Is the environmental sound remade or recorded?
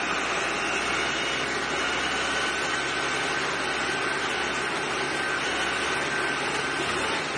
recorded